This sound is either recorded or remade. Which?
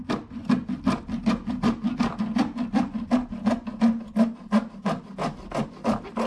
recorded